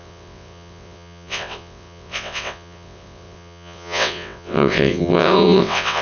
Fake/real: fake